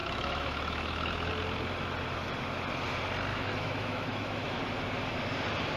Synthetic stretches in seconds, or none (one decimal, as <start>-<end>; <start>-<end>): 0.0-1.3; 3.3-4.6